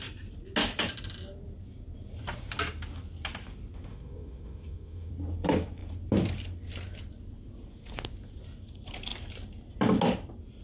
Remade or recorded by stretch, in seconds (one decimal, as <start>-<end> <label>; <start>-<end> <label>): 0.0-3.9 recorded; 3.9-5.1 remade; 5.1-10.6 recorded